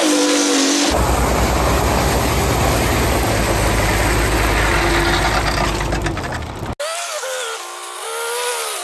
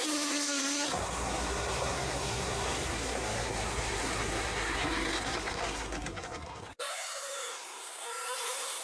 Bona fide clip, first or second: first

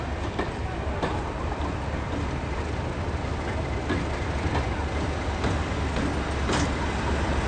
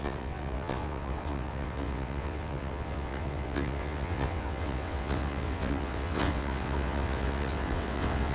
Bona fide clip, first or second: first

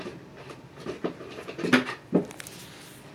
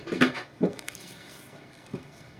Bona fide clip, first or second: first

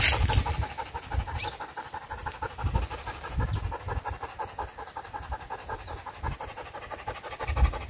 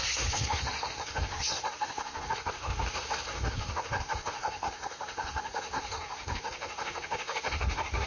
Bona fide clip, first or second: first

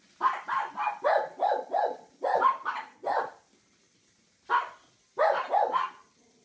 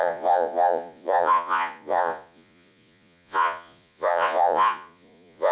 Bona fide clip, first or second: first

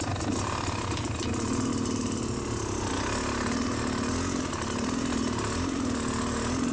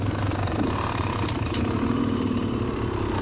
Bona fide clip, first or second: first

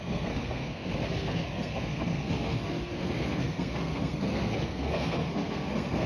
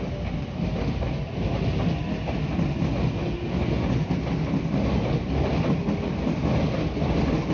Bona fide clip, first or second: second